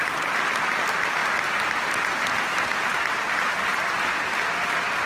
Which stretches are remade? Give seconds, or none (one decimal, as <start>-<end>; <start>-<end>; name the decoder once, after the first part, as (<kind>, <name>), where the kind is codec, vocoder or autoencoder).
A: none